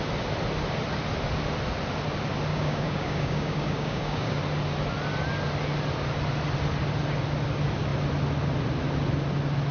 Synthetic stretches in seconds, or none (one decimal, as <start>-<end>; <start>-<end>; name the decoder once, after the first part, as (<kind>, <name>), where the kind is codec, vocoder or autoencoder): 2.5-4.4 (codec, DAC)